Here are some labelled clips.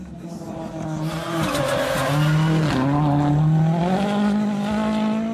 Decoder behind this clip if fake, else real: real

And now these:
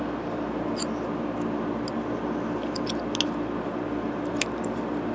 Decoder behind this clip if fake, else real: real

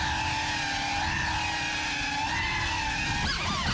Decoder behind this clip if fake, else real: real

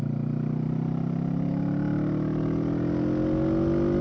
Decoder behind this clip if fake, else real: real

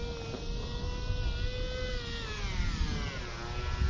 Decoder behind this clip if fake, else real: real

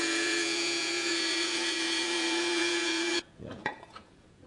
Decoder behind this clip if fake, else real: fake, vocoder, Vocos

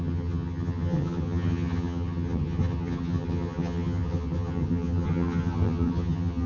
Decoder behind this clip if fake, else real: fake, vocoder, HiFi-GAN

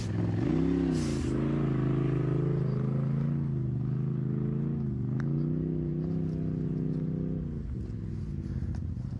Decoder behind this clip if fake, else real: real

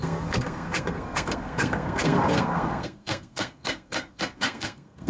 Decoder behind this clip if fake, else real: fake, codec, SNAC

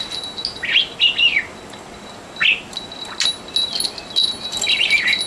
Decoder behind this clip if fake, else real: real